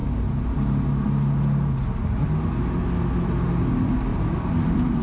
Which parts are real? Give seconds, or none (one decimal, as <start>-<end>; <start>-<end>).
0.0-4.1